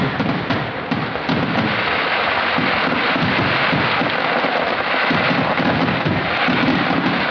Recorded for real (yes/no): yes